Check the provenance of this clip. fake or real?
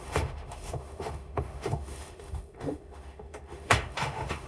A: fake